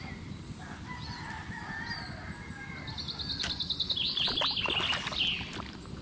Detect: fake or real real